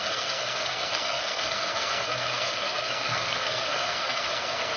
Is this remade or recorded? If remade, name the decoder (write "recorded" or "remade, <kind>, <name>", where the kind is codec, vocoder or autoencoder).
remade, codec, SNAC